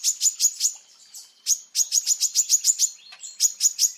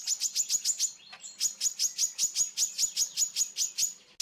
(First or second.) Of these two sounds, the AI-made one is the first